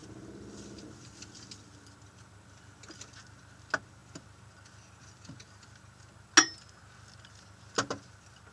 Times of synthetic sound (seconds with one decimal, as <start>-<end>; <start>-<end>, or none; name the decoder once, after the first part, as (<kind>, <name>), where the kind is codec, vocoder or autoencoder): none